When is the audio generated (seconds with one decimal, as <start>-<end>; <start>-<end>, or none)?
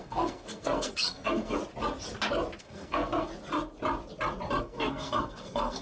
0.0-1.6; 2.6-3.3; 4.6-5.8